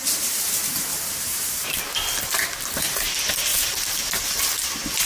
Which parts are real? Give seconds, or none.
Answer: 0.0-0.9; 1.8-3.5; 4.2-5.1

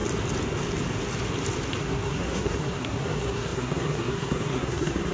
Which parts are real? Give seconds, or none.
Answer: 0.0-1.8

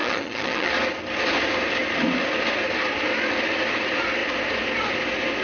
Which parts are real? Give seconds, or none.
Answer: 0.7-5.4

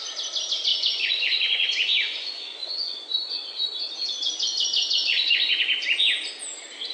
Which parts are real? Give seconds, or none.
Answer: 0.0-0.7; 3.8-4.8; 5.6-6.9

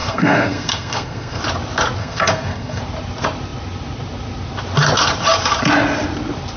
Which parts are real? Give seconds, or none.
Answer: 1.4-2.0; 2.8-6.6

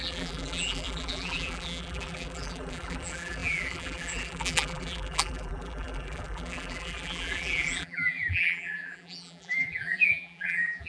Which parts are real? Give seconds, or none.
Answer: none

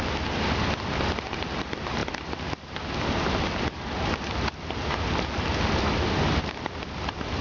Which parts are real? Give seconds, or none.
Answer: 0.0-7.4

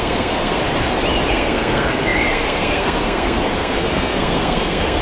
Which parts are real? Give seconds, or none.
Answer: 0.6-1.3